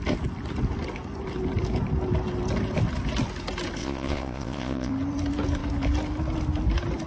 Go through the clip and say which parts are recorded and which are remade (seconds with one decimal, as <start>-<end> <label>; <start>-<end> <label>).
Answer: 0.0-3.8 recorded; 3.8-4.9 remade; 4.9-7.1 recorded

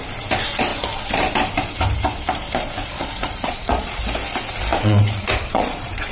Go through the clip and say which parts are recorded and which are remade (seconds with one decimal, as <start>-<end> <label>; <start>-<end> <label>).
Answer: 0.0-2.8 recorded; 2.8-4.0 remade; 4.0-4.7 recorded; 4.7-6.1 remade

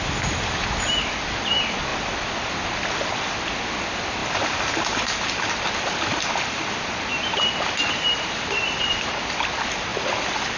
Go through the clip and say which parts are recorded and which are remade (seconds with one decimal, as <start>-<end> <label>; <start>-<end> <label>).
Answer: 0.0-10.6 recorded